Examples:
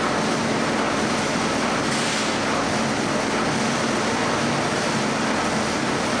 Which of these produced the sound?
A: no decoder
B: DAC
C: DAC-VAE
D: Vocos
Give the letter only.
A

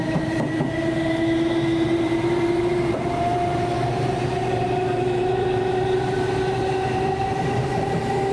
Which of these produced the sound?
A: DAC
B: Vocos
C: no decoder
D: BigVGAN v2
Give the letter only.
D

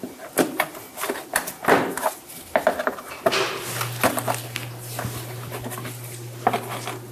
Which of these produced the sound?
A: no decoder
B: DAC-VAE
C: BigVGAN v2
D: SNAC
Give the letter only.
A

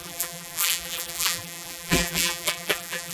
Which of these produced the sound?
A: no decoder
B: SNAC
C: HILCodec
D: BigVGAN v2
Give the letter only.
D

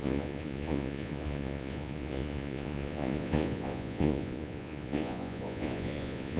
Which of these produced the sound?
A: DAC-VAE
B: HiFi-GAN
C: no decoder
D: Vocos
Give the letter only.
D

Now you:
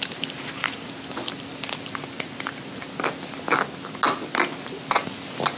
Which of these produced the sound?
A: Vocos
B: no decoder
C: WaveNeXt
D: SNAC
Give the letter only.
B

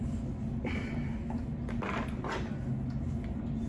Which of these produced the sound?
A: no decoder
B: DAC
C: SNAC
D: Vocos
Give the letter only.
A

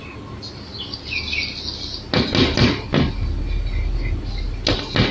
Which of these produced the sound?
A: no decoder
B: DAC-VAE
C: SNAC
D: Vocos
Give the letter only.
A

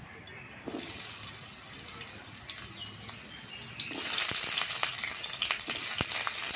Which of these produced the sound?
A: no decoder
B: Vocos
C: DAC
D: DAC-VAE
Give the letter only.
A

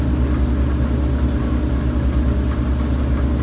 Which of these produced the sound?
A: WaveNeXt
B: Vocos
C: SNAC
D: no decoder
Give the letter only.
D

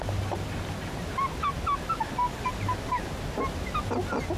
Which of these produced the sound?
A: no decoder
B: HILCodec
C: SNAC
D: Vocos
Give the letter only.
A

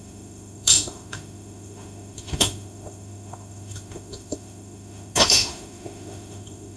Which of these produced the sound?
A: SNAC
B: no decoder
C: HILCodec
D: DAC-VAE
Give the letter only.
D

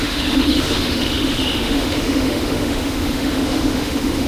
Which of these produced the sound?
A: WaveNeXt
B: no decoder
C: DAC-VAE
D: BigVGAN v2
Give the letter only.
C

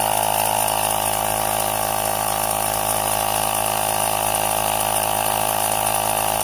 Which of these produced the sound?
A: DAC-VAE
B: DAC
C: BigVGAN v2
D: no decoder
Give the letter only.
D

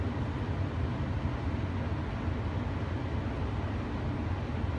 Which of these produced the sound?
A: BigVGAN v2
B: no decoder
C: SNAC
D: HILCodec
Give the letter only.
B